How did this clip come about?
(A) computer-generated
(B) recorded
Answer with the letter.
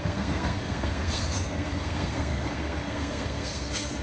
A